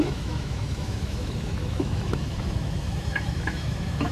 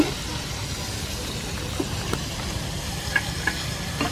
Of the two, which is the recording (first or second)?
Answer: second